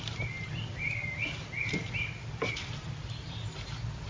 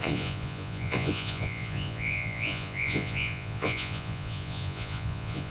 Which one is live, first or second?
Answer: first